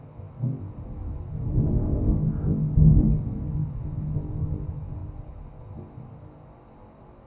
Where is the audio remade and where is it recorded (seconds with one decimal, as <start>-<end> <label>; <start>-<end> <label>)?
0.0-7.3 recorded